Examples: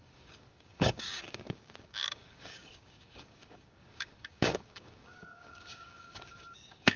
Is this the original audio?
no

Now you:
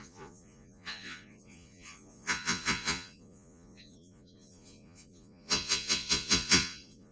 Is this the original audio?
no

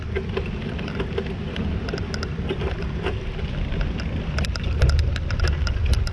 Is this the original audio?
yes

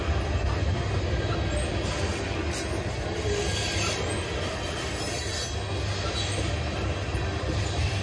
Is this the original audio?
yes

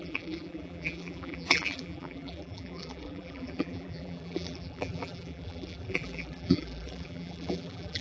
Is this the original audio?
no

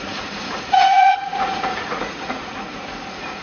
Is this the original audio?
no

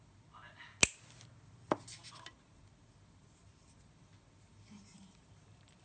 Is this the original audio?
yes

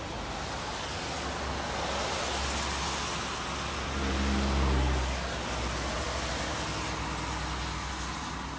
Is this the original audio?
yes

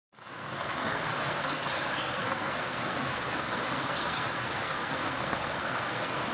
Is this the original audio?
no